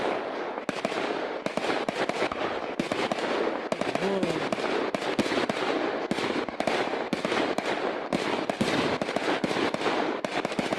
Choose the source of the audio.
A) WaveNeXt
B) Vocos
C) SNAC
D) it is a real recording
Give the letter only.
D